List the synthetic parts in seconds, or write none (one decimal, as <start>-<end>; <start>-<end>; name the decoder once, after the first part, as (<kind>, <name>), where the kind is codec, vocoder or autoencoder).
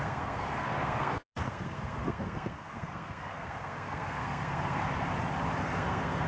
0.0-4.8 (codec, SNAC); 5.6-6.3